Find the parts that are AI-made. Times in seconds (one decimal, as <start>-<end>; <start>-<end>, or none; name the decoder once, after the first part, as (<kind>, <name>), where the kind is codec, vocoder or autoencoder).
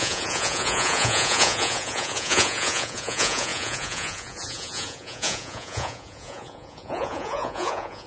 0.0-8.1 (vocoder, Vocos)